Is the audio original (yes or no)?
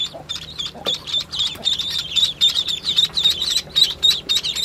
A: no